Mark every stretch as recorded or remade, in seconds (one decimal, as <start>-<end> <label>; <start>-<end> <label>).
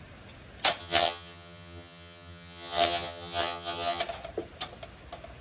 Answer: 0.0-0.8 recorded; 0.8-4.0 remade; 4.0-5.4 recorded